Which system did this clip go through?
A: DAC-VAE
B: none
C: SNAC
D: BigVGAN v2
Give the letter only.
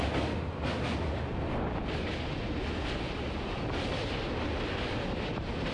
B